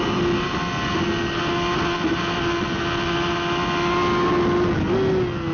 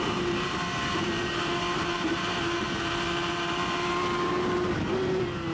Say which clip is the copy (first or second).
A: second